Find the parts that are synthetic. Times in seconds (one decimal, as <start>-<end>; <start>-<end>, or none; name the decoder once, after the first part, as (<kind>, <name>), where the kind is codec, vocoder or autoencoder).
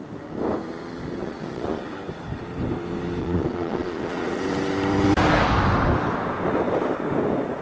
1.2-1.9 (vocoder, Vocos); 3.2-4.4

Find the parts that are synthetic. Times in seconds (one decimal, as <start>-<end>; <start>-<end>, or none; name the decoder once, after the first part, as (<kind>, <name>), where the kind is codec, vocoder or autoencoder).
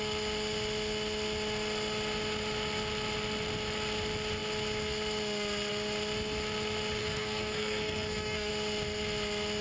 7.0-8.5 (codec, SNAC)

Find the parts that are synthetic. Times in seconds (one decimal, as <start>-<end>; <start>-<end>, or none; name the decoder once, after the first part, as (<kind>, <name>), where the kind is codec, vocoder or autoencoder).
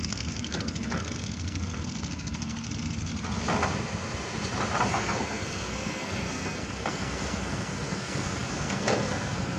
0.0-3.1 (codec, SNAC); 4.9-9.6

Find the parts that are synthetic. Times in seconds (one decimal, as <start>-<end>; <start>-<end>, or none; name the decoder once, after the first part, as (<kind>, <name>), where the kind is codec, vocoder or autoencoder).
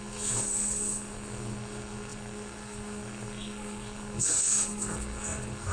0.0-5.7 (codec, SNAC)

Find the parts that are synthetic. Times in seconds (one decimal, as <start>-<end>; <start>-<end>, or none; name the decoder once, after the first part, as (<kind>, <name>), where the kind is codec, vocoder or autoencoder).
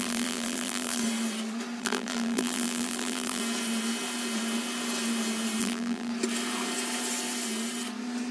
0.0-1.0 (vocoder, BigVGAN v2); 1.8-3.4; 5.6-6.1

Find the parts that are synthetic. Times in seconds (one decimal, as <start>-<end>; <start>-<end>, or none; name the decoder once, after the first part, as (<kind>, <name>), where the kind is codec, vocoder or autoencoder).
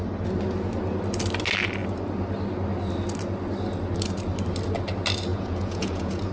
5.3-6.3 (vocoder, Vocos)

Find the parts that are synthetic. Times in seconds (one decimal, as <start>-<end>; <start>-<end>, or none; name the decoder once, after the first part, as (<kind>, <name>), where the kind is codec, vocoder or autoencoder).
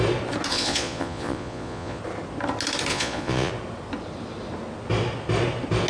0.5-2.0 (vocoder, Vocos); 2.9-3.5